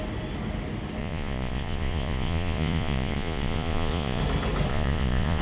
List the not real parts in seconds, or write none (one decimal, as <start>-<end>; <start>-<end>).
1.0-4.2; 4.7-5.4